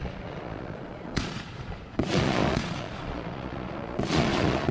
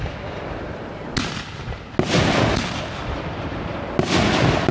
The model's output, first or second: first